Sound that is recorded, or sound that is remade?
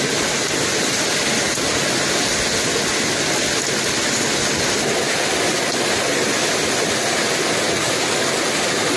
recorded